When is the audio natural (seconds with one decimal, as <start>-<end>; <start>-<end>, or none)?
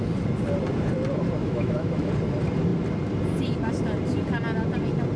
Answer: 0.0-1.4; 2.1-5.2